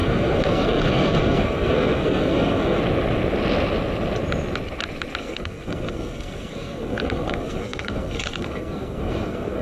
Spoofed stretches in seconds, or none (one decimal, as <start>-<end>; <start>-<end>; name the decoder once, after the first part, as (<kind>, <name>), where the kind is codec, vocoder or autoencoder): 0.0-2.8 (codec, SNAC); 5.2-9.6